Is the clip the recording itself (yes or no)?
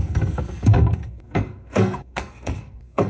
no